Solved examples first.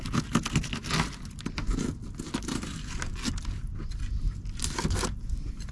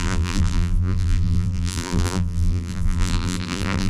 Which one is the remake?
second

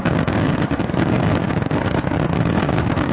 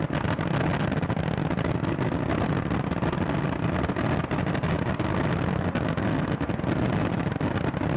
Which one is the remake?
first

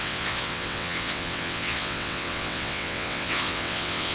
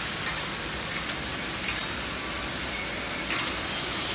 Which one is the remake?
first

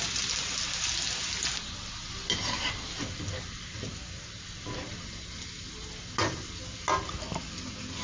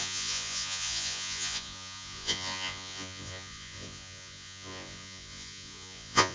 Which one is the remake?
second